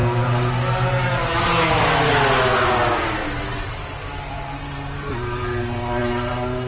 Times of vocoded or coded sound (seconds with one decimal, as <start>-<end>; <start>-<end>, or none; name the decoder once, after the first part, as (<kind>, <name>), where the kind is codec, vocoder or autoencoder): none